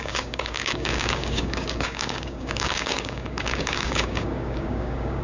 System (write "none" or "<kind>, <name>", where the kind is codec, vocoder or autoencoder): codec, DAC